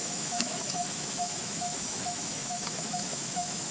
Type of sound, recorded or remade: remade